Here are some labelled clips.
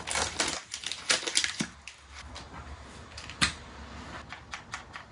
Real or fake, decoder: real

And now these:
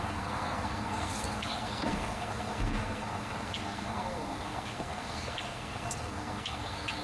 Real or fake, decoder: fake, codec, SNAC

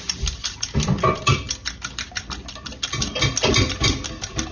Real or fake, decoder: real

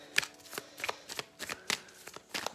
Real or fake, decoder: real